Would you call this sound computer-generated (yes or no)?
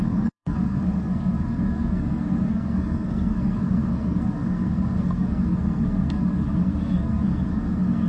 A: yes